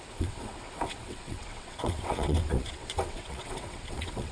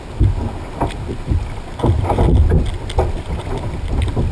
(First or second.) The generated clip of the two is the first